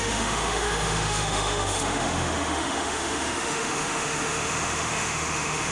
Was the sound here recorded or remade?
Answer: remade